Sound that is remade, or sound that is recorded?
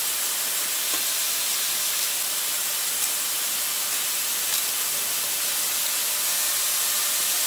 recorded